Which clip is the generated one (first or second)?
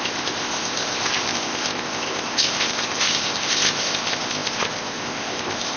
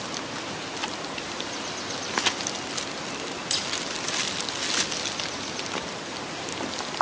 first